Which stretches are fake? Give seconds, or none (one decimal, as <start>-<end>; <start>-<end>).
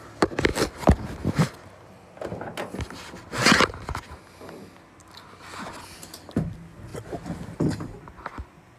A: none